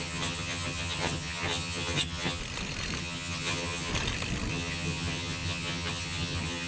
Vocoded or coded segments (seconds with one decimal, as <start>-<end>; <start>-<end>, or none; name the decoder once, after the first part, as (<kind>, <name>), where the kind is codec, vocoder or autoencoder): 0.0-2.4 (vocoder, HiFi-GAN); 3.0-3.9; 4.5-6.7

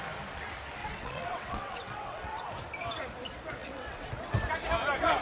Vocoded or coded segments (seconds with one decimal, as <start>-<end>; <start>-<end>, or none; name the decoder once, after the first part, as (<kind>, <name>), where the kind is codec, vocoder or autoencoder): 0.8-2.4 (vocoder, WaveNeXt); 3.6-4.1

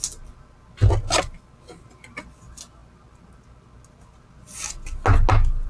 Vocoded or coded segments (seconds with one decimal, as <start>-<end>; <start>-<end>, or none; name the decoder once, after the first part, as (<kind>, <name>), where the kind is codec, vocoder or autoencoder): none

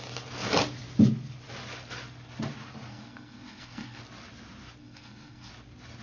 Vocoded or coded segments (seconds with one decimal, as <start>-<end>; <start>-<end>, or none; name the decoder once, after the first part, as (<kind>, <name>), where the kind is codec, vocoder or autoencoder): 2.9-4.0 (codec, SNAC); 4.8-5.5

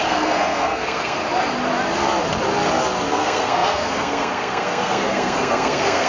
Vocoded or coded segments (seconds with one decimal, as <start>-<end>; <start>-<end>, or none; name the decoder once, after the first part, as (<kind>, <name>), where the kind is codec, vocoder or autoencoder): 0.0-1.2 (codec, SNAC); 3.1-6.1